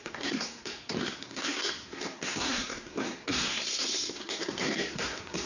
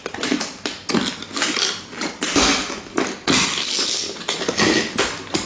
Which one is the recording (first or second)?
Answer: second